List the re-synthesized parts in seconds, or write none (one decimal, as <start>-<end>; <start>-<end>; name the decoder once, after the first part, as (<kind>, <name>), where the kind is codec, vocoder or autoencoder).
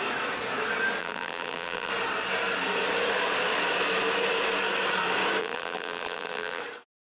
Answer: 1.0-1.9 (vocoder, BigVGAN v2); 5.4-6.6